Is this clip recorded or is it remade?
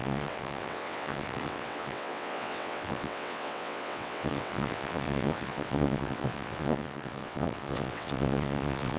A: remade